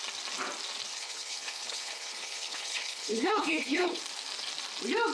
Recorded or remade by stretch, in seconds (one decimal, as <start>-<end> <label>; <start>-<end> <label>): 0.0-0.9 recorded; 0.9-4.0 remade; 4.0-5.1 recorded